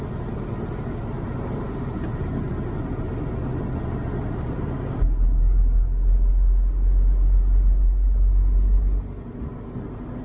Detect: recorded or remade recorded